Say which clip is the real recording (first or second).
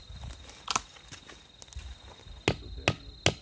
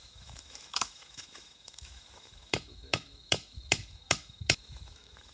first